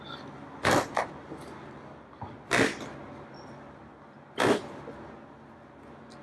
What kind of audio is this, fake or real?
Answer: real